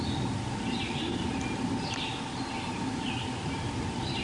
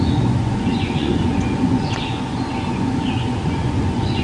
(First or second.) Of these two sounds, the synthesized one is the second